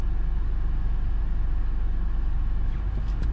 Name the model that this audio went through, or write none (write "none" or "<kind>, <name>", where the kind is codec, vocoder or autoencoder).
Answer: none